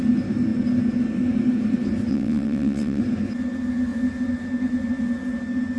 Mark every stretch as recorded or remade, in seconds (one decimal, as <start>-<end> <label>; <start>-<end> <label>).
0.0-2.1 recorded; 2.1-3.0 remade; 3.0-5.8 recorded